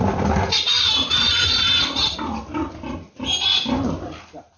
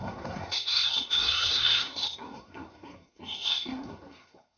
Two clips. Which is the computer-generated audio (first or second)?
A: second